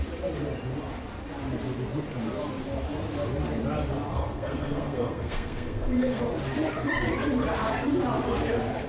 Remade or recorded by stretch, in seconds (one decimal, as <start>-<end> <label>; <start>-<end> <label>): 0.0-4.1 recorded; 4.1-6.2 remade; 6.2-8.9 recorded